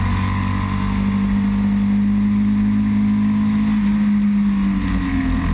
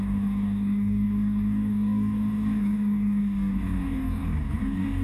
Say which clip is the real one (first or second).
first